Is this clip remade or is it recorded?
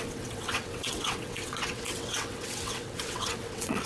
remade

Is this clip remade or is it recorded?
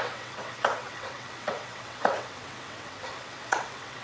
remade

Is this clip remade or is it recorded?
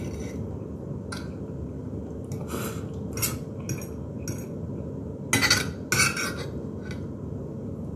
recorded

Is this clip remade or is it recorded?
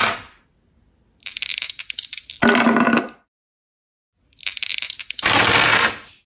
recorded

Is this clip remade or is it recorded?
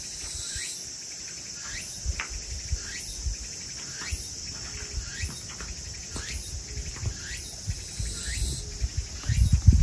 recorded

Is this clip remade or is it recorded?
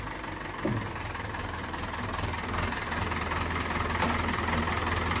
recorded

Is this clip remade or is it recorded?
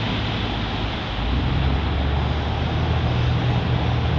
recorded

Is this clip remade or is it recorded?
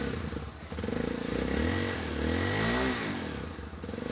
recorded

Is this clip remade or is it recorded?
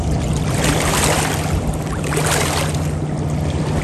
recorded